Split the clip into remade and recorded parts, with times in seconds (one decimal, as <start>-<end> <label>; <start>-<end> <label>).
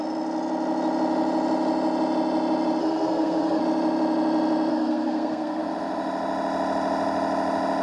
0.0-2.8 recorded; 2.8-3.6 remade; 3.6-4.7 recorded; 4.7-5.6 remade; 5.6-7.8 recorded